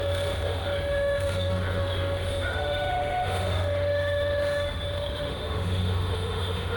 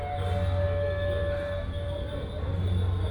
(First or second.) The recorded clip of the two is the second